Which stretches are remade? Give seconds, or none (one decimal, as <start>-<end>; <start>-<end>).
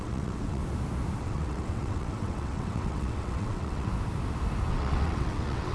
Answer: 0.0-0.6; 1.2-3.9; 4.7-5.7